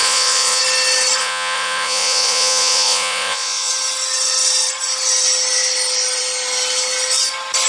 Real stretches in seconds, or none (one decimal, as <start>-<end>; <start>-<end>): 0.6-1.2; 3.7-7.7